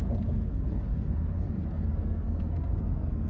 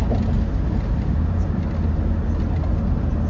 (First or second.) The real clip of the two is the second